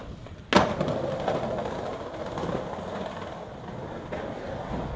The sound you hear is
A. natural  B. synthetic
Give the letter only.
A